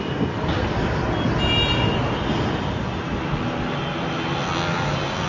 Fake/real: real